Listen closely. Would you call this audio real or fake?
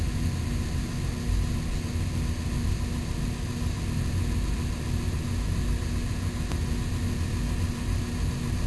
real